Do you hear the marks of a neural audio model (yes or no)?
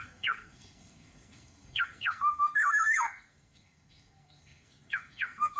yes